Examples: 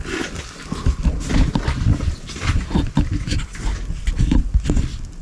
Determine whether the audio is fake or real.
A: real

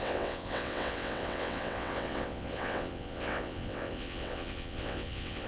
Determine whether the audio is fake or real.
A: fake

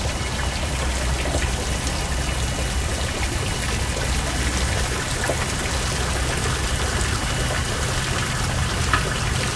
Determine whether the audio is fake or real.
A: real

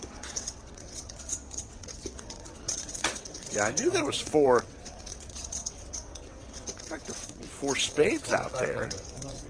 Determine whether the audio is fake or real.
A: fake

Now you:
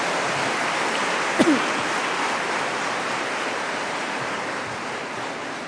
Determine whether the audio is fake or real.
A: real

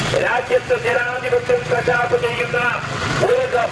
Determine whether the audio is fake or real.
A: fake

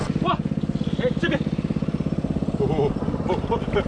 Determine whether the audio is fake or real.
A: real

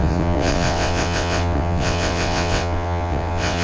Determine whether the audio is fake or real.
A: fake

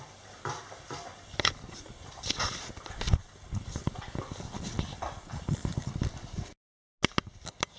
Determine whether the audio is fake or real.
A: real